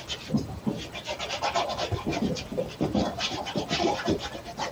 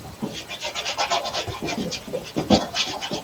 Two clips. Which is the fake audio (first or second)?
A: first